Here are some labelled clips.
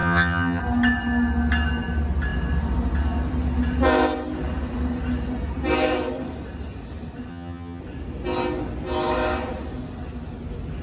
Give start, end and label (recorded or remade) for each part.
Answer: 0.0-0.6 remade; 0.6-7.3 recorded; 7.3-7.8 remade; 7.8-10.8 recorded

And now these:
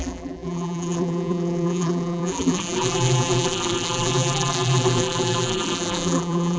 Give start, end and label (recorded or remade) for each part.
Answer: 0.0-6.6 remade